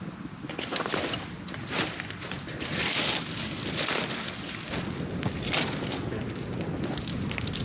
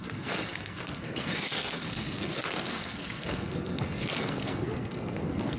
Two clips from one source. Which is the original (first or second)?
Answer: first